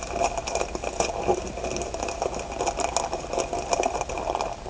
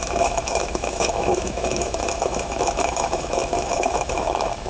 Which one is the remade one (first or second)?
second